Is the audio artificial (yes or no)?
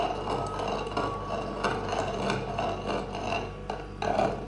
no